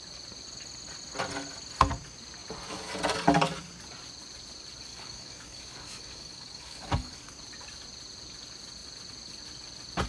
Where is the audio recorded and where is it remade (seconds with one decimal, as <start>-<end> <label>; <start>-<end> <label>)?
0.0-4.9 recorded; 4.9-7.2 remade; 7.2-10.1 recorded